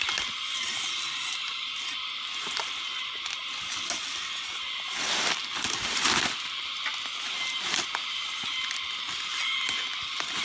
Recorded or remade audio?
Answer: recorded